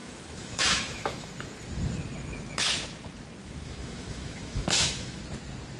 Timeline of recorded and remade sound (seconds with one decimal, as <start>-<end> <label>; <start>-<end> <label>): 0.0-1.3 remade; 1.3-3.4 recorded; 3.4-5.2 remade; 5.2-5.8 recorded